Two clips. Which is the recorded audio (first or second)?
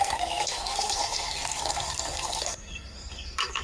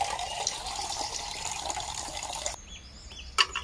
second